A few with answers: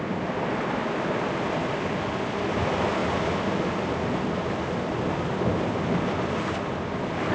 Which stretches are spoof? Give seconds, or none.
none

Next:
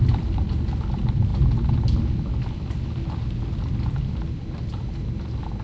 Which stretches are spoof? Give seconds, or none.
none

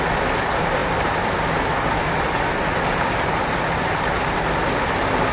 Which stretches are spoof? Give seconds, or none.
none

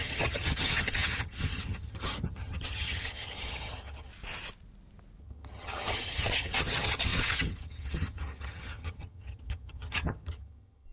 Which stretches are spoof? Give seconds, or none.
0.0-4.1; 5.2-10.9

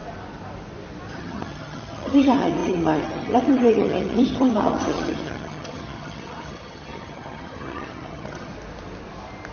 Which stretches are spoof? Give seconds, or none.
1.1-8.5